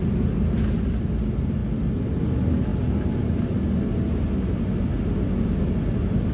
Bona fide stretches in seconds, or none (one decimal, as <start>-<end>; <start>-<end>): 0.0-6.3